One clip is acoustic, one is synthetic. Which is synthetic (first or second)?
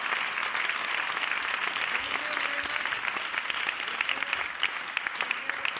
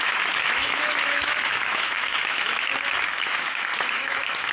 second